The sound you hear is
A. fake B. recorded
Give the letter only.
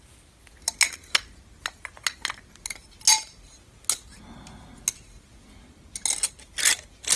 B